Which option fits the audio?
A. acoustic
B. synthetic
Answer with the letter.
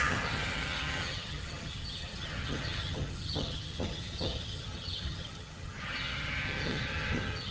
B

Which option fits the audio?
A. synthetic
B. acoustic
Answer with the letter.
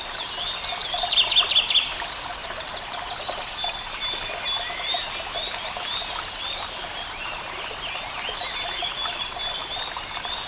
B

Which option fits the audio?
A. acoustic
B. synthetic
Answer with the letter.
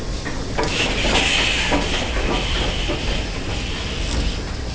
A